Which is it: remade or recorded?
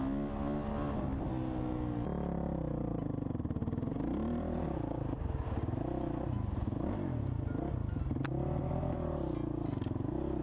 recorded